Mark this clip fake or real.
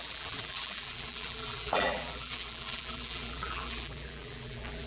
fake